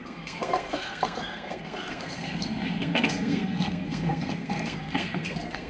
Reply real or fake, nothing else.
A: fake